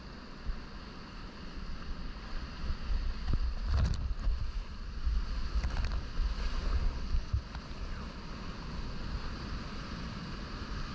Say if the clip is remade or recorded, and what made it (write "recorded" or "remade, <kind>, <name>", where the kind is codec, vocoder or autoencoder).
recorded